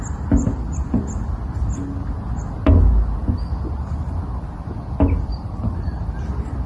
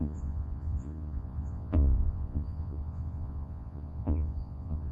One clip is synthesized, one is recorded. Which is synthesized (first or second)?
second